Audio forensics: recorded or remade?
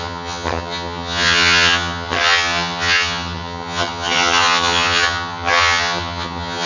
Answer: remade